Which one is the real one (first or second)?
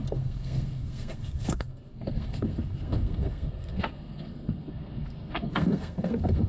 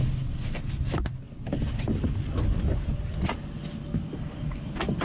second